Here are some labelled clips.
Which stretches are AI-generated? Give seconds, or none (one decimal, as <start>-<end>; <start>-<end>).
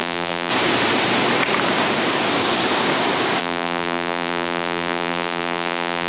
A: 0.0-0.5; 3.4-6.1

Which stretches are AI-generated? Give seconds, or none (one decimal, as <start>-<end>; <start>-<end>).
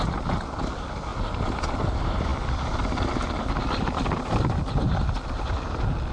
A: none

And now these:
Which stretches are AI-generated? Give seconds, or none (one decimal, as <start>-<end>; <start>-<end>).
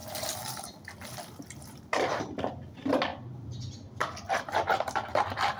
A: 0.0-2.2; 3.1-3.7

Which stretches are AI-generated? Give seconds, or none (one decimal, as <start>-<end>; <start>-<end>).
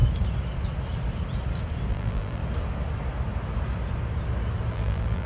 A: 1.9-2.4; 4.7-5.3